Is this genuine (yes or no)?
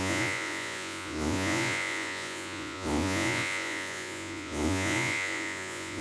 no